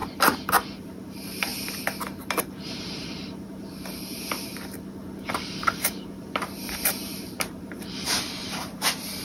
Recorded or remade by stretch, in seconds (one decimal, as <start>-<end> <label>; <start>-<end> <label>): 0.0-0.8 recorded; 0.8-1.5 remade; 1.5-2.4 recorded; 2.4-4.5 remade; 4.5-5.3 recorded; 5.3-9.2 remade